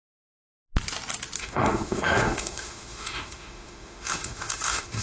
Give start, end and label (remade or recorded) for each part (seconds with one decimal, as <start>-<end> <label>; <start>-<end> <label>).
0.0-1.4 recorded; 1.4-5.0 remade